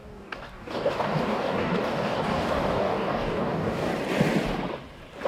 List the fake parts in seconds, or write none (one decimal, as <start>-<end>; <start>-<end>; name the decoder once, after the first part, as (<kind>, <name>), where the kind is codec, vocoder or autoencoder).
0.0-3.9 (codec, DAC)